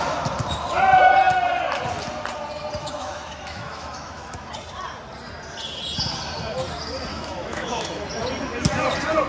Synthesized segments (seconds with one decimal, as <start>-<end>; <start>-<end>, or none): 2.8-4.5; 7.1-8.1